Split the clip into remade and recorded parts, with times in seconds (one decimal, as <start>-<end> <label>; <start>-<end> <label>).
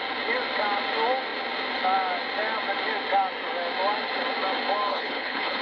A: 0.0-4.9 recorded; 4.9-5.6 remade